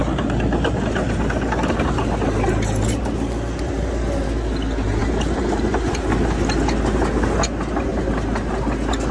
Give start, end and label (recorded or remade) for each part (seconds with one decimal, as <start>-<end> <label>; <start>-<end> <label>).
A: 0.0-9.1 recorded